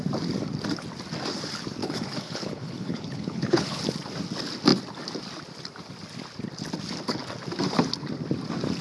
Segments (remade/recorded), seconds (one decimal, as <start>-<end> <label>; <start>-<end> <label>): 0.0-1.8 recorded; 1.8-3.8 remade; 3.8-8.8 recorded